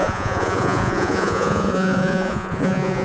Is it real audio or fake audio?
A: fake